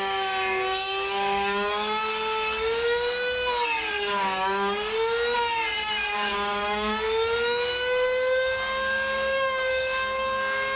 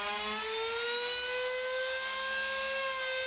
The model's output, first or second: first